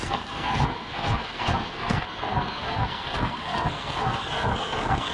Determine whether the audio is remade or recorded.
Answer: remade